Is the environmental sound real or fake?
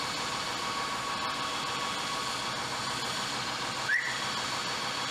real